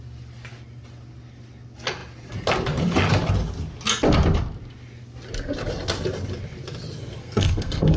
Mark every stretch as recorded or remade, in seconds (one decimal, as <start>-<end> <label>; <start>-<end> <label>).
0.0-7.2 recorded; 7.2-8.0 remade